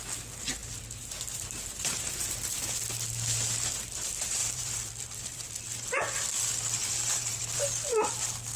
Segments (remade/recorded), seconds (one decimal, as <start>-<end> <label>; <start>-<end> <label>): 0.0-4.4 recorded; 4.4-5.2 remade; 5.2-6.8 recorded; 6.8-7.4 remade; 7.4-8.6 recorded